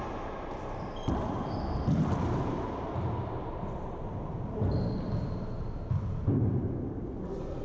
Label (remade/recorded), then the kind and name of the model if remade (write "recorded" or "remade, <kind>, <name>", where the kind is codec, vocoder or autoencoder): recorded